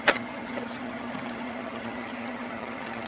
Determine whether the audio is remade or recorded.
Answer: remade